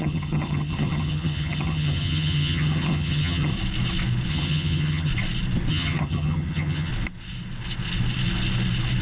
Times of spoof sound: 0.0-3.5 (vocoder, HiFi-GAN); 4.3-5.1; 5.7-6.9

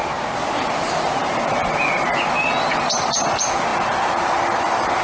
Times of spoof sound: 0.6-1.2 (vocoder, BigVGAN v2); 3.0-5.0

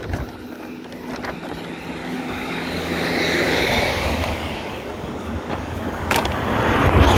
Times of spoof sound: 2.0-6.3 (codec, DAC)

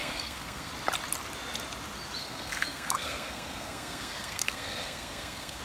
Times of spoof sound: 0.0-0.7 (codec, SNAC); 2.2-5.6